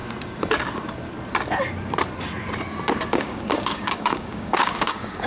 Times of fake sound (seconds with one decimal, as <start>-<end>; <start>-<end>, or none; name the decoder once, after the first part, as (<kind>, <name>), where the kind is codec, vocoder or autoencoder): 3.2-5.3 (codec, DAC)